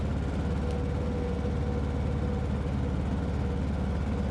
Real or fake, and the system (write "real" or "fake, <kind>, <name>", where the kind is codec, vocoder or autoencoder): real